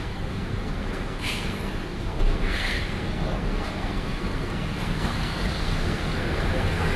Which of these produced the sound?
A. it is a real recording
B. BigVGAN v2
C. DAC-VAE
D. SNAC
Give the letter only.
D